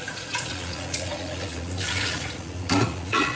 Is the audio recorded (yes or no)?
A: no